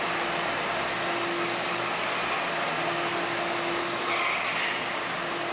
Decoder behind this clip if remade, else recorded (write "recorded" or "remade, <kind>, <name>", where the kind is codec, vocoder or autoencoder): recorded